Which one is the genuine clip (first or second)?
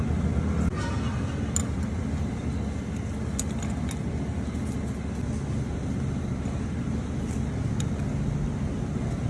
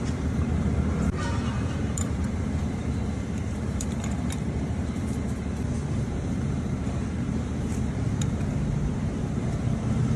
first